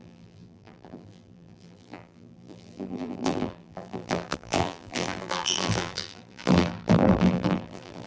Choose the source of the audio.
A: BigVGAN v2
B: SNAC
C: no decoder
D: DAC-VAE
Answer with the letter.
A